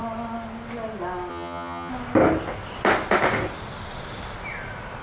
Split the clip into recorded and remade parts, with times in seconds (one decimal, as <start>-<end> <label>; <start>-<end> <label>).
0.0-1.3 recorded; 1.3-1.9 remade; 1.9-5.0 recorded